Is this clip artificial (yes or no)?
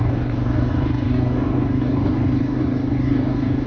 yes